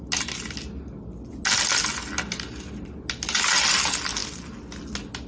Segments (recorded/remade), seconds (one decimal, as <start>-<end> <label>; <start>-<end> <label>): 0.0-5.3 recorded